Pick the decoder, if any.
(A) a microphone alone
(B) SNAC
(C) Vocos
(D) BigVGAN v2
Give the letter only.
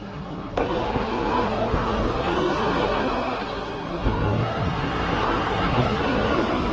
B